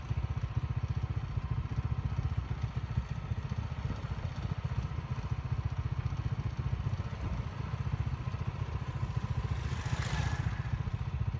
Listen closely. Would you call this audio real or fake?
real